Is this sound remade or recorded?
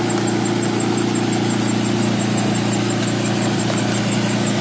recorded